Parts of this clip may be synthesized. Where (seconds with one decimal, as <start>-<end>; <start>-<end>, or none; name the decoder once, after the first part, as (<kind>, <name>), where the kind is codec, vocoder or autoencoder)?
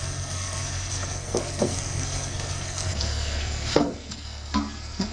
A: 0.0-5.1 (codec, SNAC)